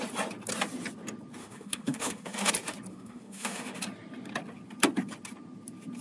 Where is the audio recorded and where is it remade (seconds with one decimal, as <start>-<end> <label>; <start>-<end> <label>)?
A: 0.0-1.4 recorded; 1.4-2.5 remade; 2.5-2.9 recorded; 2.9-3.8 remade; 3.8-6.0 recorded